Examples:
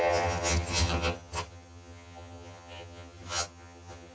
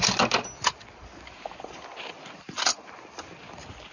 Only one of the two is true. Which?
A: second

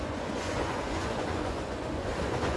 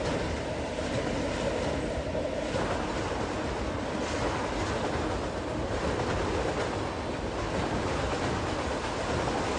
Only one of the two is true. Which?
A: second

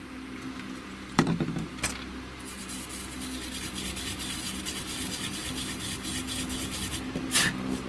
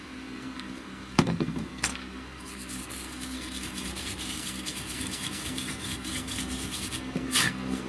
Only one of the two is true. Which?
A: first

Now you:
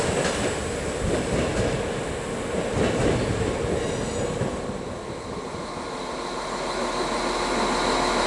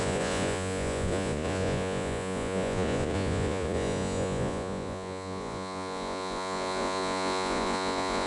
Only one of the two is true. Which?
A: first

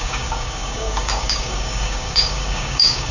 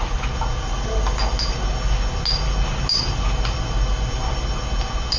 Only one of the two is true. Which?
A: second